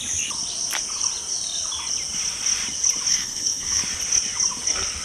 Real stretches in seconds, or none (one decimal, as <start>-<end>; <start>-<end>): 0.0-3.1; 3.8-5.0